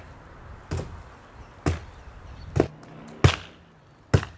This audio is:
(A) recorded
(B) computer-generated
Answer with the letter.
A